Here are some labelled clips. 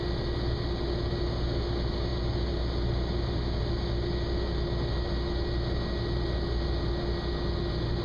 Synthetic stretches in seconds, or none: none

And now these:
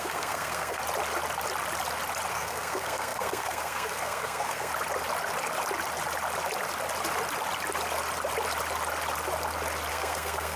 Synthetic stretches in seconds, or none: 0.0-0.8; 2.3-4.7; 9.9-10.6

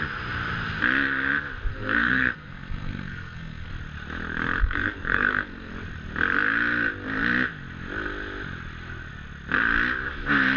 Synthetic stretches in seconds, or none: 1.7-3.7; 4.6-5.7